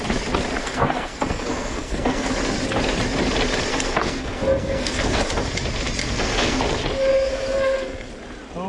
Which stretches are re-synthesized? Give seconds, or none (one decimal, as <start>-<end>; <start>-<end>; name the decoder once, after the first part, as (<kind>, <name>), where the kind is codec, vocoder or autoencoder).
0.6-2.3 (codec, SNAC); 3.7-5.2; 6.0-6.6; 7.1-8.1